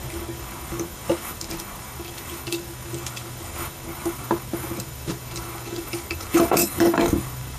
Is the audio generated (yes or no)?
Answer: yes